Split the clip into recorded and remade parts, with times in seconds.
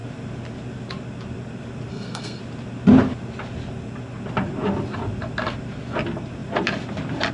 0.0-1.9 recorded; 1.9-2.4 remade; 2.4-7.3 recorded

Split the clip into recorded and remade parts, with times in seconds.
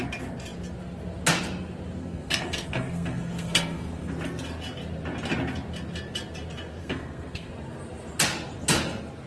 0.0-2.0 recorded; 2.0-4.1 remade; 4.1-6.8 recorded; 6.8-7.5 remade; 7.5-9.3 recorded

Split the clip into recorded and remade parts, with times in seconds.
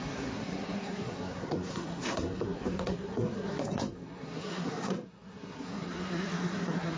0.0-7.0 remade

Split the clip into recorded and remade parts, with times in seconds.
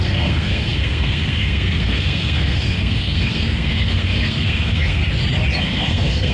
0.0-5.0 remade; 5.0-5.6 recorded; 5.6-6.3 remade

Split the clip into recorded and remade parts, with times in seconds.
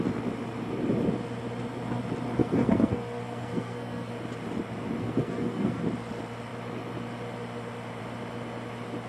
0.0-2.4 recorded; 2.4-4.1 remade; 4.1-5.0 recorded; 5.0-5.8 remade; 5.8-9.1 recorded